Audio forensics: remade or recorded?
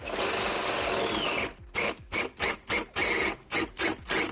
recorded